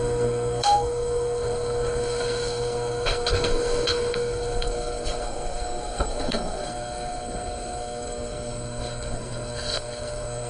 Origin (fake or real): fake